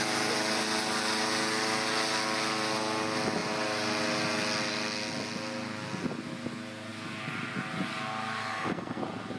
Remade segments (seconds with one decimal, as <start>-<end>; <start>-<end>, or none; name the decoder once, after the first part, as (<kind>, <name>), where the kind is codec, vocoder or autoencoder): 8.4-9.0 (codec, SNAC)

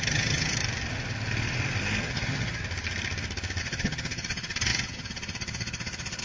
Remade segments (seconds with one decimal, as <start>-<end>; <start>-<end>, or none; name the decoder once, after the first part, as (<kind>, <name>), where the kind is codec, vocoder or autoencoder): 0.0-0.6 (vocoder, HiFi-GAN); 2.0-2.6; 3.6-6.2

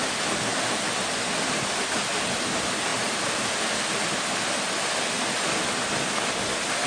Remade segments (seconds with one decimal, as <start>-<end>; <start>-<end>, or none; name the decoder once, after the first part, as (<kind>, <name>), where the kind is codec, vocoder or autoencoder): none

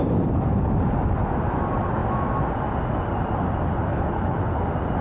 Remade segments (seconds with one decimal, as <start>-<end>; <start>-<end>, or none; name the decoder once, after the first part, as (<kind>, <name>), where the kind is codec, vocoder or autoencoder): 3.9-4.6 (codec, HILCodec)

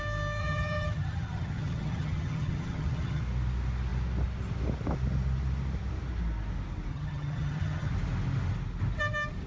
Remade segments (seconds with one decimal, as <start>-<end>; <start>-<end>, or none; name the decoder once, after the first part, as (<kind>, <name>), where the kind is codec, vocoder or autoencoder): 0.4-3.2 (vocoder, HiFi-GAN); 6.9-7.9

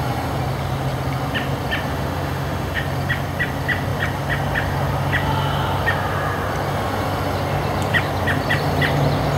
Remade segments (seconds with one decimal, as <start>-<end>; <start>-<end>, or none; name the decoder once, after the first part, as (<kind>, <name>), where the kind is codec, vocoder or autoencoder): 1.9-2.8 (autoencoder, DAC-VAE)

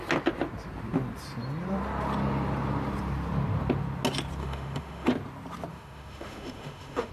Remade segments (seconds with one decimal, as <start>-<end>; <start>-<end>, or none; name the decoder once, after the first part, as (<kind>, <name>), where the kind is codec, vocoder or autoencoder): 4.4-5.1 (autoencoder, DAC-VAE); 5.7-7.1

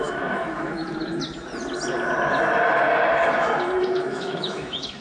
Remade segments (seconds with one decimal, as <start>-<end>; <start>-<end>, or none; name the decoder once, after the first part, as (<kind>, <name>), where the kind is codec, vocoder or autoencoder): 0.0-0.8 (autoencoder, DAC-VAE); 3.8-5.0